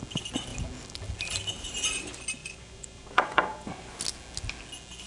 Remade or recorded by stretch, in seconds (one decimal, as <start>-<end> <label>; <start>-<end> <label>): 0.0-2.4 recorded; 2.4-4.0 remade; 4.0-5.1 recorded

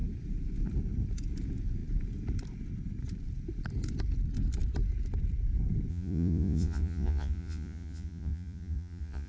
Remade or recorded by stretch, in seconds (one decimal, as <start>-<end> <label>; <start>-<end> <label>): 0.0-5.9 recorded; 5.9-9.3 remade

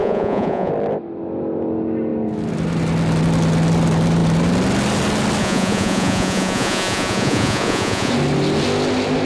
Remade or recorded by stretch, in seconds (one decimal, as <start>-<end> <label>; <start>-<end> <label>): 0.0-0.7 remade; 0.7-5.4 recorded; 5.4-8.1 remade; 8.1-9.3 recorded

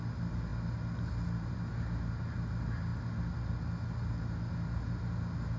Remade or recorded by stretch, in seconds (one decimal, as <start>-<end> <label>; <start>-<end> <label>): 0.0-5.6 recorded

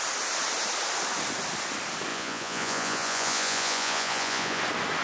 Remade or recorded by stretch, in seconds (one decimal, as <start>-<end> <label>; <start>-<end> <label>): 0.0-2.1 recorded; 2.1-4.6 remade; 4.6-5.0 recorded

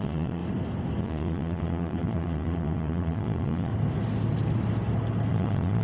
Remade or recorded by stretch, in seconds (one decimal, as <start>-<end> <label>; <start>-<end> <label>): 0.0-0.4 remade; 0.4-1.0 recorded; 1.0-3.7 remade; 3.7-5.3 recorded; 5.3-5.8 remade

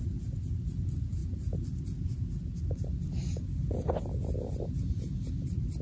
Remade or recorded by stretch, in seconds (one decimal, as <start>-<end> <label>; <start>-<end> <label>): 0.0-5.8 recorded

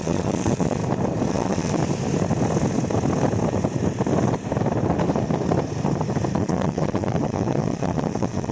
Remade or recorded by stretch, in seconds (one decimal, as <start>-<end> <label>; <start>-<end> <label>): 0.0-0.8 remade; 0.8-1.3 recorded; 1.3-1.8 remade; 1.8-6.4 recorded; 6.4-8.5 remade